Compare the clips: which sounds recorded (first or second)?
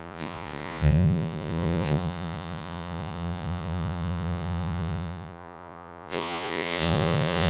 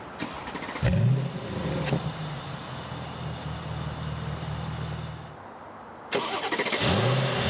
second